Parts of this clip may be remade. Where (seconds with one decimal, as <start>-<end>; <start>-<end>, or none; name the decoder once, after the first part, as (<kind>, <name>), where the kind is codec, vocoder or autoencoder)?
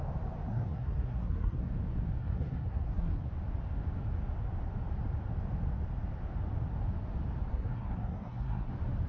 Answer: 0.5-1.7 (codec, SNAC); 2.2-3.3; 7.5-8.7